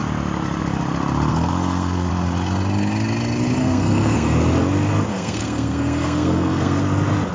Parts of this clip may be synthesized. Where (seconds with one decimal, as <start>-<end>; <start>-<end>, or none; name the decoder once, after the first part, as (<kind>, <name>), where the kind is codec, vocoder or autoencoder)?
1.3-2.1 (codec, SNAC); 3.6-4.4; 5.1-6.8